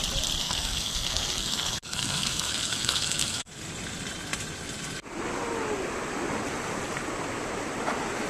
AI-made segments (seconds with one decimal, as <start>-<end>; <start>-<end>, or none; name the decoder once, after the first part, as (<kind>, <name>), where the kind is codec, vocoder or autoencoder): 0.4-3.5 (codec, SNAC)